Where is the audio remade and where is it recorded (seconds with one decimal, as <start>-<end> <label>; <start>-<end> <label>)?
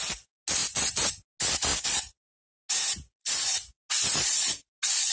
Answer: 0.0-0.6 recorded; 0.6-1.1 remade; 1.1-3.2 recorded; 3.2-3.7 remade; 3.7-5.1 recorded